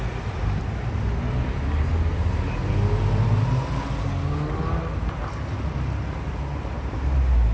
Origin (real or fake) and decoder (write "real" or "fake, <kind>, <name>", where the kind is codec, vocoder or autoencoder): real